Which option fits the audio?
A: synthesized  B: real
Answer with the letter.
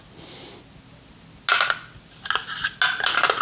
B